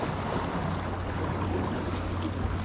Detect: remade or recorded recorded